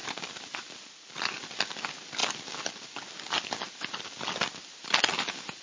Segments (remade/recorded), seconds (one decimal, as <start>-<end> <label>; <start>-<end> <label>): 0.0-5.6 recorded